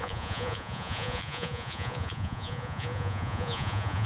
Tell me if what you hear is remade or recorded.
remade